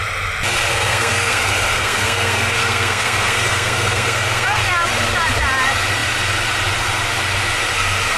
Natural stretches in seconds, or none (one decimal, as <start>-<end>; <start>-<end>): 0.0-0.7; 4.6-8.2